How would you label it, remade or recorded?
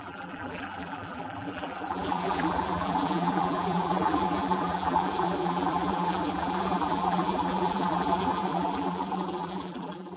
remade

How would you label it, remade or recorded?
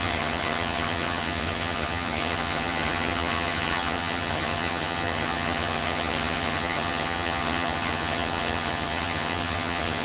remade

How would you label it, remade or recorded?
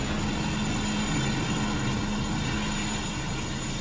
recorded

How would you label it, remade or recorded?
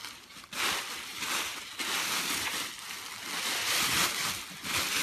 recorded